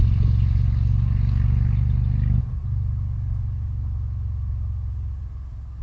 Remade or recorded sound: recorded